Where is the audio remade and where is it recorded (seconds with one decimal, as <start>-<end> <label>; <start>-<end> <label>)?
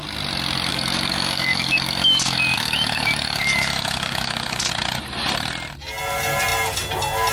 0.0-0.7 recorded; 0.7-4.7 remade; 4.7-7.3 recorded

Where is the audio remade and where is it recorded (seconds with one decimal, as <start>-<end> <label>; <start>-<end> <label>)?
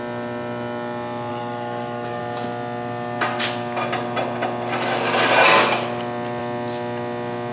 0.0-1.3 recorded; 1.3-2.2 remade; 2.2-7.5 recorded